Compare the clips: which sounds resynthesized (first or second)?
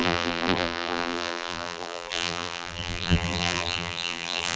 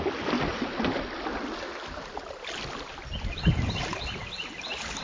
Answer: first